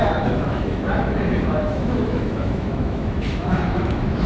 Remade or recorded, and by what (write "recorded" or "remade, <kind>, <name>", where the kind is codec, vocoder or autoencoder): remade, autoencoder, DAC-VAE